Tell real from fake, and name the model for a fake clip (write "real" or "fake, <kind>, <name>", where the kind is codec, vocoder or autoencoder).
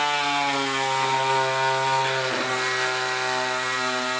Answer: real